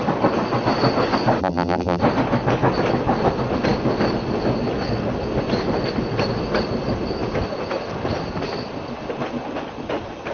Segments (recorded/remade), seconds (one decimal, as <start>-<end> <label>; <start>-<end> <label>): 0.0-1.4 recorded; 1.4-2.0 remade; 2.0-10.3 recorded

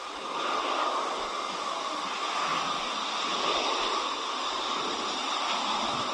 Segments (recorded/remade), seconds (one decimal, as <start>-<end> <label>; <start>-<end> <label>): 0.0-6.1 recorded

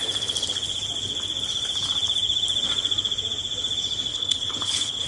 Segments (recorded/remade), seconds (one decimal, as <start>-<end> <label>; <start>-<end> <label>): 0.0-4.1 recorded; 4.1-5.1 remade

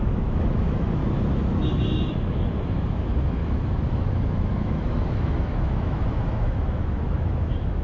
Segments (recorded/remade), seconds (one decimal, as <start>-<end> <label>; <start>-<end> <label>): 0.0-1.0 remade; 1.0-2.1 recorded; 2.1-7.8 remade

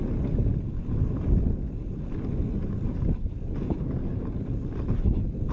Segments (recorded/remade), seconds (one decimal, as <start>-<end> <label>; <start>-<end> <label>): 0.0-5.5 recorded

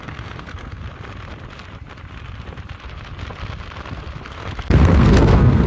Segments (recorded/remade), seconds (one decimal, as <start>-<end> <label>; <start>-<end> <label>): 0.0-0.8 remade; 0.8-4.2 recorded; 4.2-5.7 remade

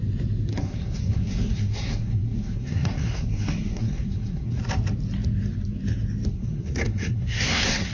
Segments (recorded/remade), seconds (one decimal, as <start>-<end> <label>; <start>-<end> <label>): 0.0-0.5 recorded; 0.5-4.6 remade; 4.6-6.3 recorded; 6.3-7.9 remade